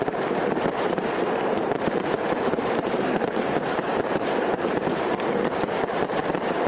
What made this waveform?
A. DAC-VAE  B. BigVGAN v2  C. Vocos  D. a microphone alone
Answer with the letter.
B